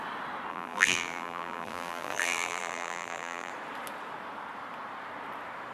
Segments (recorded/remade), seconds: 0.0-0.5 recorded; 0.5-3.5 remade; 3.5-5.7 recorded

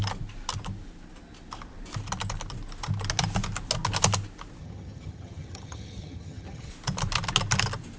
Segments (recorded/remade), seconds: 0.0-4.6 recorded; 4.6-6.7 remade; 6.7-8.0 recorded